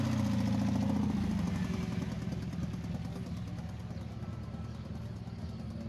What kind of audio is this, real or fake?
real